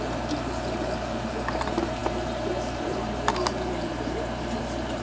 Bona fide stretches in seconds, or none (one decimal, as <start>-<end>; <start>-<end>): none